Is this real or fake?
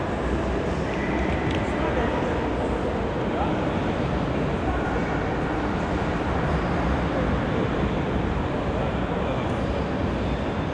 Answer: real